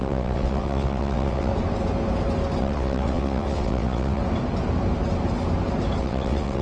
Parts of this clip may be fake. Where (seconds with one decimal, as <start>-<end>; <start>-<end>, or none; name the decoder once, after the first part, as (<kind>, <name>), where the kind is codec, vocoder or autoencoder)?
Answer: 0.0-1.5 (vocoder, WaveNeXt); 2.6-4.2; 6.0-6.6

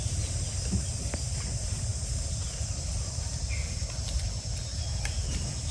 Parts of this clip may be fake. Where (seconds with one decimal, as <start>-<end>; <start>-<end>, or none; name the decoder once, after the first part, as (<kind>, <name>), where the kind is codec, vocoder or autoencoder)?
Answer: none

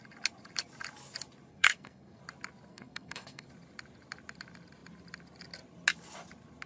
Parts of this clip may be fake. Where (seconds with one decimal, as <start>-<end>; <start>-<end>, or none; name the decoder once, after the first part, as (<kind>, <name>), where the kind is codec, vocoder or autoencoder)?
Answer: 1.5-2.2 (codec, SNAC); 2.7-3.5

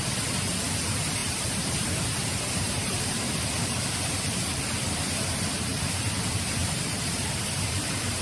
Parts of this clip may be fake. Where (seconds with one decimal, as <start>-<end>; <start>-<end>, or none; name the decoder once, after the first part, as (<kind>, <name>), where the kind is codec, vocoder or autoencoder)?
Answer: 1.2-3.8 (vocoder, BigVGAN v2); 6.6-8.2